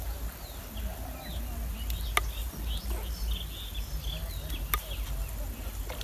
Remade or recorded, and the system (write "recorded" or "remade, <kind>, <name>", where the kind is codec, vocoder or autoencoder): recorded